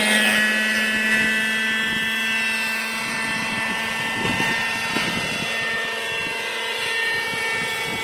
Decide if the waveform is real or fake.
real